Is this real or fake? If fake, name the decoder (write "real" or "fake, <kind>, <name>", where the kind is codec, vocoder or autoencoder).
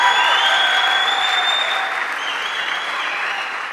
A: real